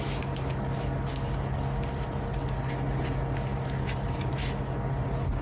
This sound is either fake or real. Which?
real